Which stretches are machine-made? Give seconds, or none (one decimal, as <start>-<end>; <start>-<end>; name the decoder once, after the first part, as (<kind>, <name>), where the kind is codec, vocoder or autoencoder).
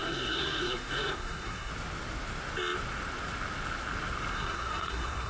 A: 0.0-1.7 (codec, SNAC); 4.3-5.3